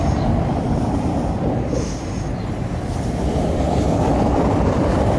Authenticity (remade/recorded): remade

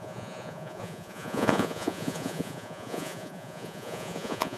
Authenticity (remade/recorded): remade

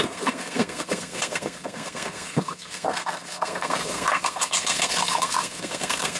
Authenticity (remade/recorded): remade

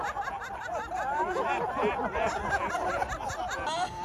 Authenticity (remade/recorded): recorded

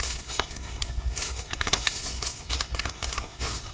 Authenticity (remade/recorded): remade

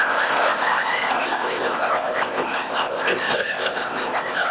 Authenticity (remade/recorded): remade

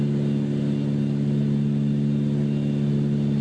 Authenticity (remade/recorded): recorded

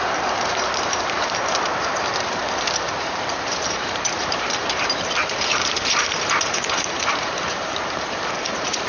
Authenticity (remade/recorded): remade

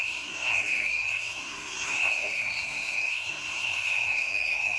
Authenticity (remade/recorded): remade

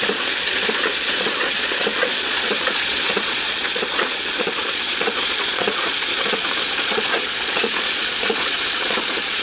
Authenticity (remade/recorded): remade